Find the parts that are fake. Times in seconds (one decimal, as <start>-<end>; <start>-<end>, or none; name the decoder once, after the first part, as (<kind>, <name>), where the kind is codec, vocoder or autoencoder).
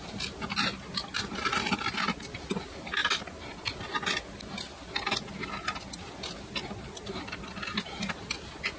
none